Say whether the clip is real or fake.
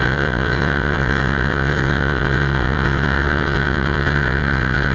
fake